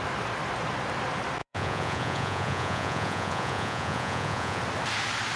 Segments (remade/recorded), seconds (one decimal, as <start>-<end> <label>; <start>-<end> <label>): 0.0-1.4 recorded; 1.4-4.6 remade; 4.6-5.4 recorded